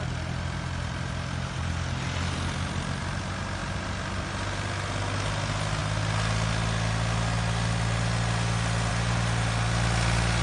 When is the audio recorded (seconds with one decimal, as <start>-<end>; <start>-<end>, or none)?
0.0-10.4

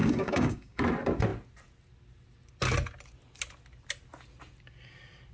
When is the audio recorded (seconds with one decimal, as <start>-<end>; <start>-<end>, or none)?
0.8-5.3

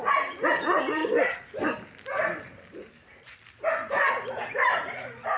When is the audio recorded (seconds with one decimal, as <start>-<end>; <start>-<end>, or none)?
0.0-5.4

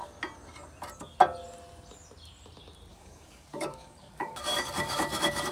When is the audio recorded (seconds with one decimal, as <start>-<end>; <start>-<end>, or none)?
0.0-2.9

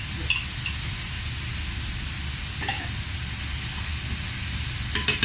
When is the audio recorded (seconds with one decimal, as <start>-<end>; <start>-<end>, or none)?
0.0-5.2

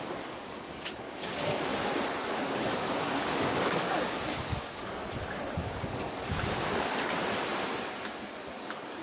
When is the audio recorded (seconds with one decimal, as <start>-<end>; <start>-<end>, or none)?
1.7-2.3; 5.0-5.6; 6.9-8.5

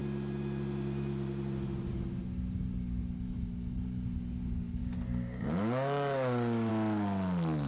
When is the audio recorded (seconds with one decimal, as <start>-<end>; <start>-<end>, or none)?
0.0-4.8; 6.7-7.7